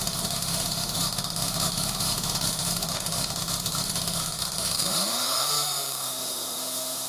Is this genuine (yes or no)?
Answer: no